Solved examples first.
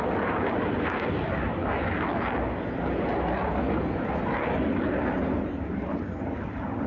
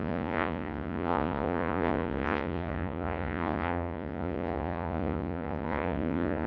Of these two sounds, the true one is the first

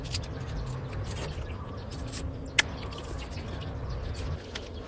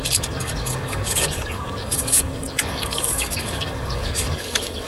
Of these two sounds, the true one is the first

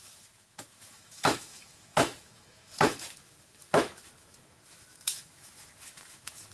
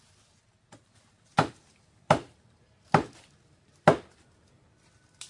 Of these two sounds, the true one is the second